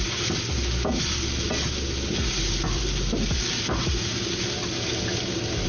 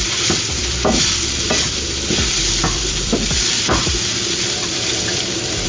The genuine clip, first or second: first